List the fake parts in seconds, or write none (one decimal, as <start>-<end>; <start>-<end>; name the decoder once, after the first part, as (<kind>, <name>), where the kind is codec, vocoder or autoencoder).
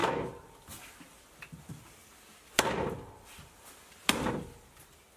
none